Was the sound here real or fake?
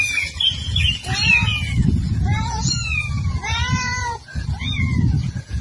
fake